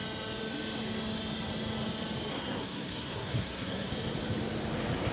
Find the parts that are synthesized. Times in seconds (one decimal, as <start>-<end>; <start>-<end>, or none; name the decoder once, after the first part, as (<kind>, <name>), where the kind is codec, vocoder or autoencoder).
2.3-3.9 (codec, SNAC)